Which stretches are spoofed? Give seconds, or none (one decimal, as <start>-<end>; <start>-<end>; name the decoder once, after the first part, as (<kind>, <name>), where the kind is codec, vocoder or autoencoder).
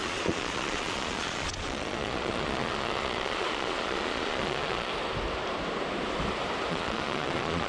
0.0-4.9 (vocoder, Vocos); 6.7-7.7